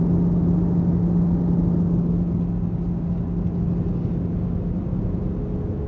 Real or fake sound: real